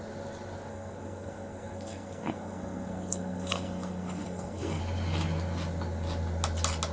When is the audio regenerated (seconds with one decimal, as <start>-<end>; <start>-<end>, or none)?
0.7-4.8